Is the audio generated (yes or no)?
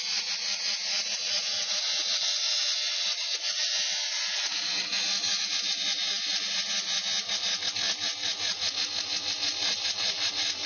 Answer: yes